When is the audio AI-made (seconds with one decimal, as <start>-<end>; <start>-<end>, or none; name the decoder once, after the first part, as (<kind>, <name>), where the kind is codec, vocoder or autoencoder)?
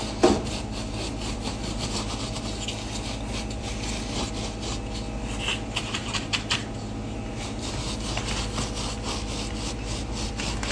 6.0-7.7 (vocoder, BigVGAN v2)